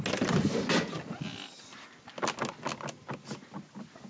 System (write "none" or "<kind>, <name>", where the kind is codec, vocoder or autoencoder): none